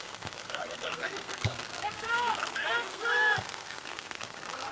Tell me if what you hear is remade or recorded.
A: remade